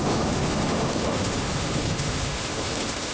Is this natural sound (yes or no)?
no